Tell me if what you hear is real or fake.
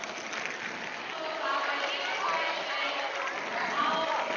real